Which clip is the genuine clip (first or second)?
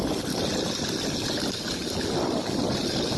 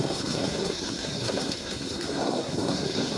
first